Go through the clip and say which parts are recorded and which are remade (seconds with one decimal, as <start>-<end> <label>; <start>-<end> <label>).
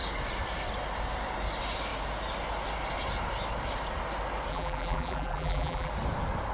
0.0-4.5 recorded; 4.5-5.9 remade; 5.9-6.5 recorded